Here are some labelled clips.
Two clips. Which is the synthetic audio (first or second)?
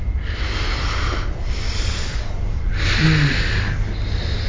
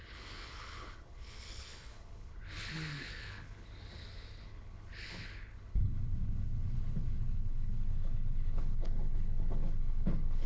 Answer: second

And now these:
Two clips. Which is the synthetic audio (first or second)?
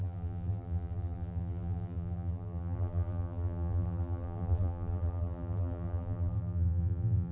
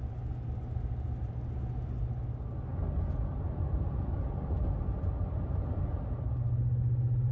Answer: first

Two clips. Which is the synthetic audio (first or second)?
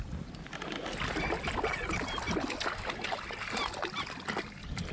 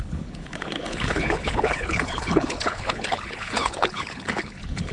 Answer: second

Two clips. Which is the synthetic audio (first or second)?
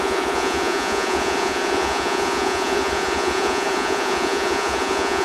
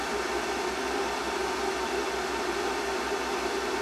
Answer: first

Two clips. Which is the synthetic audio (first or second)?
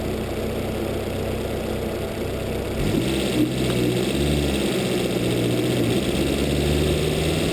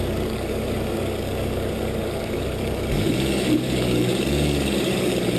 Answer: second